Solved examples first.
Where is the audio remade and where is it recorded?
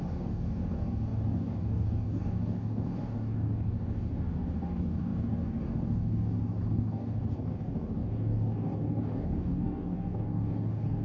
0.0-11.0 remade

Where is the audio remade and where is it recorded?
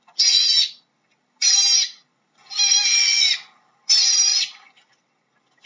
0.0-5.7 recorded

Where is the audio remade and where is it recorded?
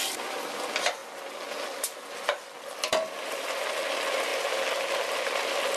0.0-1.0 remade; 1.0-2.9 recorded; 2.9-4.3 remade; 4.3-4.9 recorded; 4.9-5.8 remade